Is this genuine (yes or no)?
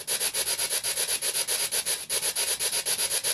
yes